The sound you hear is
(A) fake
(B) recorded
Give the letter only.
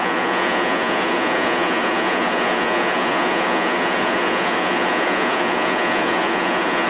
A